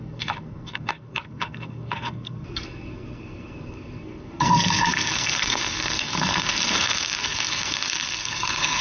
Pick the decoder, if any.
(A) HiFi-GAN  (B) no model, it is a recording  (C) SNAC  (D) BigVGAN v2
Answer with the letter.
C